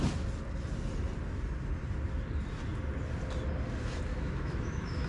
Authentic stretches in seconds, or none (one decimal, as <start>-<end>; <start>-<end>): 0.0-4.1